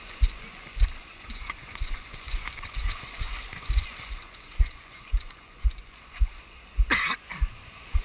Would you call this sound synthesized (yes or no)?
yes